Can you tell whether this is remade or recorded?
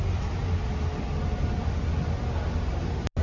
recorded